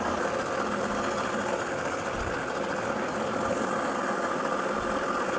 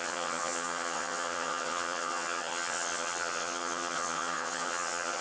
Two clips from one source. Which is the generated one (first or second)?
second